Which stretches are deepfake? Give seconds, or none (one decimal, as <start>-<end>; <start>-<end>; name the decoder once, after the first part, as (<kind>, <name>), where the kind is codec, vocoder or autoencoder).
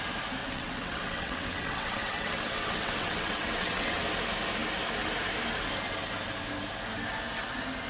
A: 0.4-4.0 (vocoder, WaveNeXt)